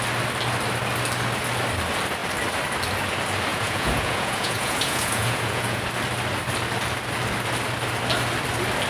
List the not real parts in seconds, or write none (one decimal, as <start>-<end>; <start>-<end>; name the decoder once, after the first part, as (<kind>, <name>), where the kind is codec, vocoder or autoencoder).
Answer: 3.5-5.9 (vocoder, Vocos)